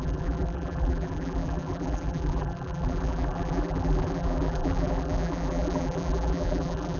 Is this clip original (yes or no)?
no